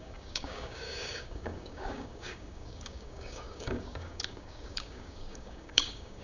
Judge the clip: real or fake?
fake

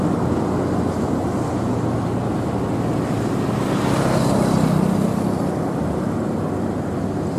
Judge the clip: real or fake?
real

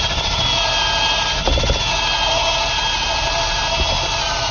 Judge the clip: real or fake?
real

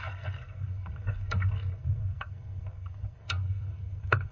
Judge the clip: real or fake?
fake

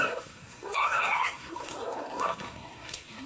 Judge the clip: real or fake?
fake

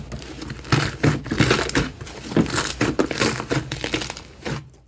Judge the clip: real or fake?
real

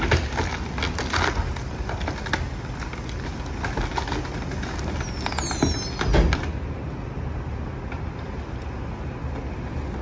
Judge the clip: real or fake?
real